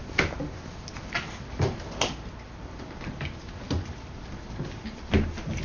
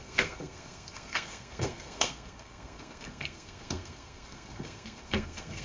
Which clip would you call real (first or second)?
first